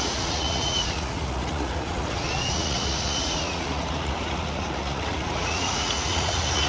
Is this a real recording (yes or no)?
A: no